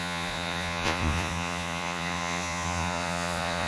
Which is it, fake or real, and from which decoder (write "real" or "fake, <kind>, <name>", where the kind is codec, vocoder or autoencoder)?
fake, vocoder, Vocos